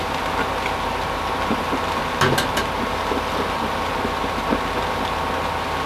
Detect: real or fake real